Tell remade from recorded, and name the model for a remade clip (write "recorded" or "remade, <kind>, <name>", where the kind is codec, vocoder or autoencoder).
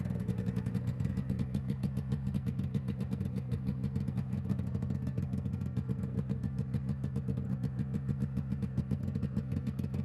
remade, codec, SNAC